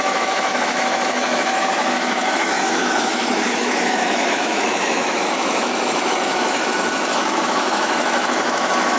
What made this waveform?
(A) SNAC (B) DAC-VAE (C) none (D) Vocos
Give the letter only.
B